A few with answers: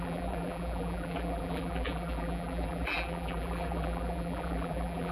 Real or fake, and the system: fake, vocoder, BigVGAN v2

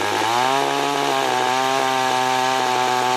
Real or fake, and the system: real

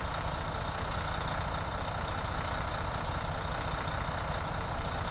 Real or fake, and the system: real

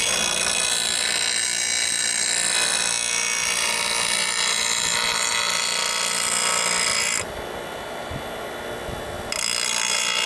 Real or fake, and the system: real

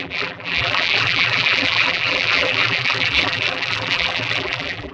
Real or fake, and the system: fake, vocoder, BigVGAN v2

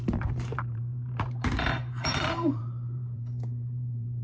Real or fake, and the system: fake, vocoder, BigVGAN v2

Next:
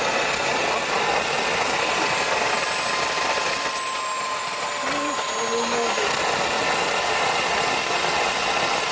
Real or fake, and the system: real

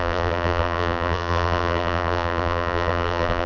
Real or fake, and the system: fake, vocoder, BigVGAN v2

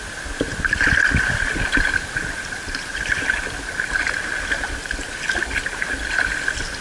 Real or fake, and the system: real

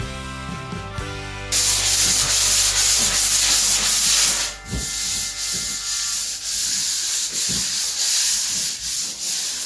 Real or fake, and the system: real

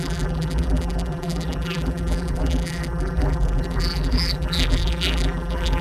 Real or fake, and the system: fake, vocoder, BigVGAN v2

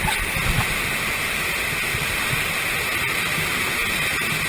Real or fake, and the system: real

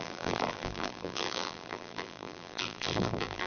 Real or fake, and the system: fake, vocoder, BigVGAN v2